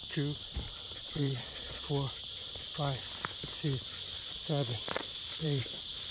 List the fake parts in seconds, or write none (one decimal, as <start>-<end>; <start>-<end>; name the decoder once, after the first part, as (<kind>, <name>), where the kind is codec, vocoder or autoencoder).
1.0-1.9 (vocoder, Vocos); 4.2-5.6